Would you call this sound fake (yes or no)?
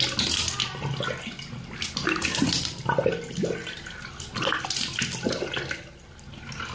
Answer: no